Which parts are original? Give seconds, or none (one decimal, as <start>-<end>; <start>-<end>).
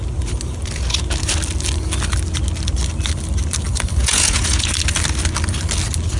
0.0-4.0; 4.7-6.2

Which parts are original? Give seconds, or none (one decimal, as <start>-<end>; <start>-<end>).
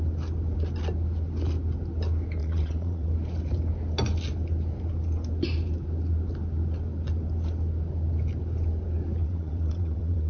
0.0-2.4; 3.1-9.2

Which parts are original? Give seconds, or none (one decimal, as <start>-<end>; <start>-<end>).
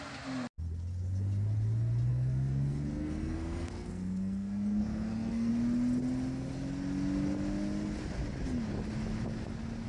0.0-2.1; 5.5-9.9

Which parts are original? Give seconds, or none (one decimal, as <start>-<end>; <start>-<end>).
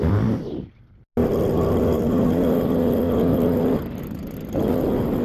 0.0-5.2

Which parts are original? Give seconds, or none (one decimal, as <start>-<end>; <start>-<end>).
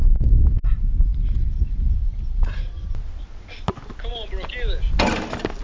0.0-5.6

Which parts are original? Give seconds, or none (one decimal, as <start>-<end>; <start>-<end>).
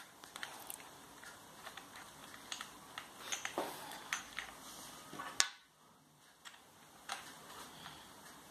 2.2-6.4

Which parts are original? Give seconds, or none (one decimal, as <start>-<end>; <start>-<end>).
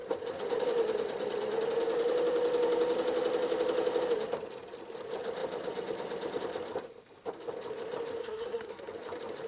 0.0-8.2; 8.9-9.5